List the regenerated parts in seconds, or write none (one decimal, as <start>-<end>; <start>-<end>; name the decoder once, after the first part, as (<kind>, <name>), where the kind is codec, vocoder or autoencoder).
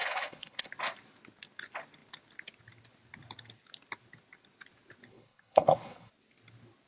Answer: 0.0-0.7 (codec, HILCodec); 5.1-6.1